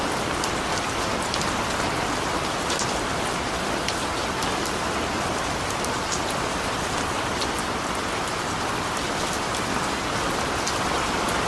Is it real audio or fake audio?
real